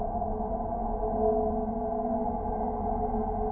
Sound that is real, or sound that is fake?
real